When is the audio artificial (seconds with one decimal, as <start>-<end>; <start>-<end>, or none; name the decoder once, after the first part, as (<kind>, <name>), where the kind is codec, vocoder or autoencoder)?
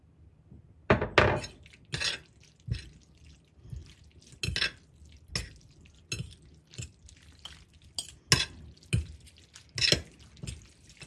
none